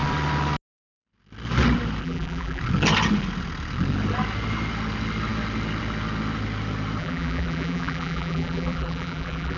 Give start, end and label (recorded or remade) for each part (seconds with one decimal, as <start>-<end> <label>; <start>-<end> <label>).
0.0-2.0 recorded; 2.0-2.6 remade; 2.6-7.0 recorded; 7.0-9.6 remade